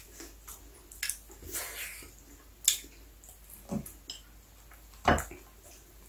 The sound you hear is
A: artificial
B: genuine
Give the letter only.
B